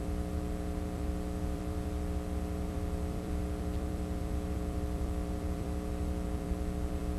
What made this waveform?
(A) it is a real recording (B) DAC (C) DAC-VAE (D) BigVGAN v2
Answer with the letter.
D